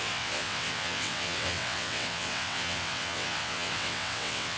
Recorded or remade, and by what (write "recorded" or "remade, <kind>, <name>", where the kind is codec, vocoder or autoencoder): remade, vocoder, WaveNeXt